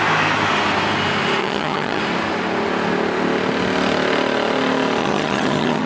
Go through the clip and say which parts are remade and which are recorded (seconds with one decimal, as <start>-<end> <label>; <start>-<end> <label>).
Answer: 0.0-1.4 recorded; 1.4-2.0 remade; 2.0-5.0 recorded; 5.0-5.9 remade